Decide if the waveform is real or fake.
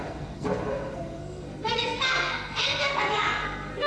fake